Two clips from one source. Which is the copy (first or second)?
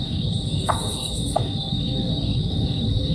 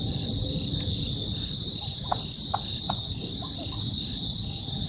first